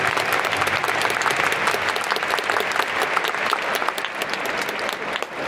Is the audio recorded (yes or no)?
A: yes